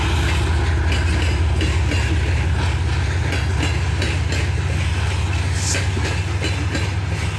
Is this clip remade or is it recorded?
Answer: recorded